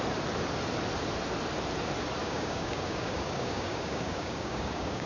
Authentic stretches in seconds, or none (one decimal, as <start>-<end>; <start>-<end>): 0.0-2.2